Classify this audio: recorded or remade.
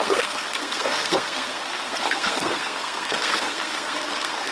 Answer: remade